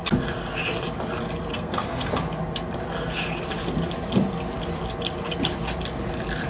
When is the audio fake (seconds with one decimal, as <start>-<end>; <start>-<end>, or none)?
1.5-2.1